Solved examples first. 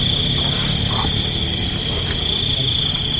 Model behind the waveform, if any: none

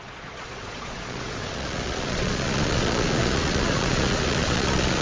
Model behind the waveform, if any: vocoder, Vocos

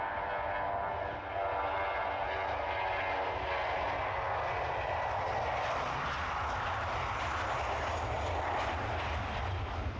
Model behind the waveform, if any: none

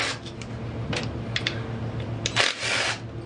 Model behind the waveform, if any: none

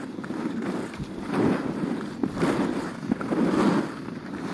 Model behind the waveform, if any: none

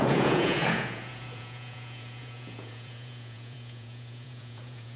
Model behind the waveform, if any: vocoder, Vocos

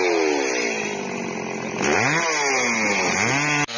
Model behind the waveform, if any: none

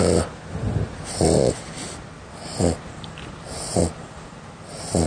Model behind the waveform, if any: none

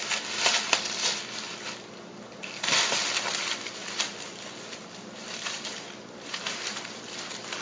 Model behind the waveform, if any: none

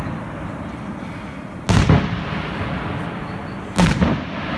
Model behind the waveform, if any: none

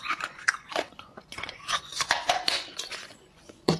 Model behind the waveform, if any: vocoder, Vocos